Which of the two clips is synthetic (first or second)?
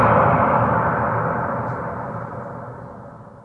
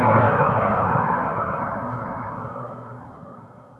second